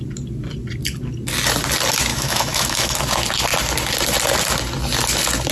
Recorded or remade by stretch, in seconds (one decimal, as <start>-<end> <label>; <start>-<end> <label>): 0.0-2.1 recorded; 2.1-3.0 remade; 3.0-5.5 recorded